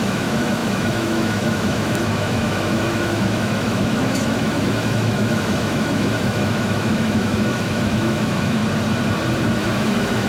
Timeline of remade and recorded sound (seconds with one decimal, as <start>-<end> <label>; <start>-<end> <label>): 0.0-8.6 remade; 8.6-9.4 recorded; 9.4-10.3 remade